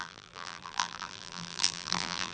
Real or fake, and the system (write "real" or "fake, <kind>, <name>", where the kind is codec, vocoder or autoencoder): fake, vocoder, BigVGAN v2